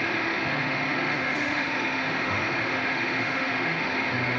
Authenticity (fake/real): fake